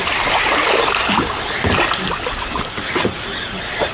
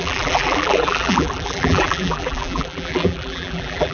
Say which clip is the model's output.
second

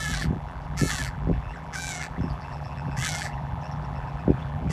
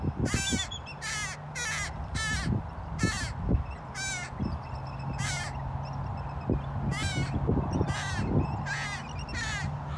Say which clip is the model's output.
first